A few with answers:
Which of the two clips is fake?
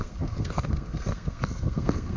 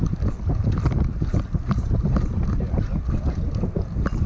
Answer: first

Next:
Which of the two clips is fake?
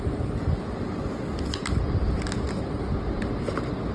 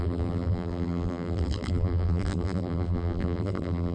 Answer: second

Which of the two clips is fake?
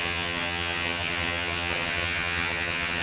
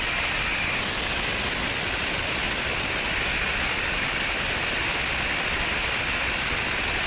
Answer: first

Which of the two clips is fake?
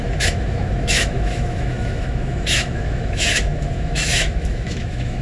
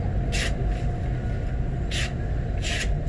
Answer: first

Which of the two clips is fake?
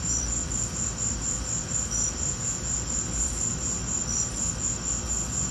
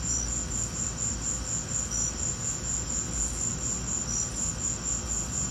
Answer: first